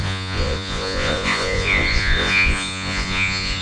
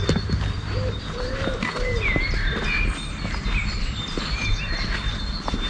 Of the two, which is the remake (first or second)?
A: first